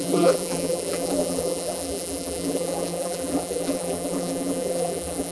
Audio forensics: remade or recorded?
remade